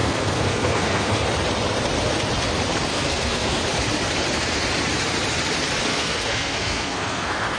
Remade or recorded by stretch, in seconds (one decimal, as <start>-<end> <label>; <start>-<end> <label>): 0.0-1.1 remade; 1.1-2.9 recorded; 2.9-3.6 remade; 3.6-5.9 recorded; 5.9-7.6 remade